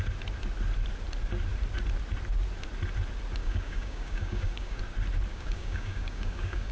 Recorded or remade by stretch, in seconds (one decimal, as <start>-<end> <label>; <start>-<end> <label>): 0.0-3.4 recorded; 3.4-4.8 remade; 4.8-5.3 recorded; 5.3-6.7 remade